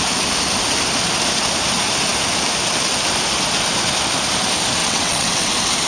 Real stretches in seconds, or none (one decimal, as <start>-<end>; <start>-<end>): 0.0-4.8; 5.5-5.9